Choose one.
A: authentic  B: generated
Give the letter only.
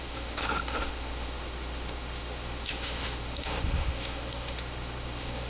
B